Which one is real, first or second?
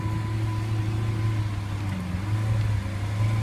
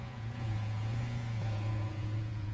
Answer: first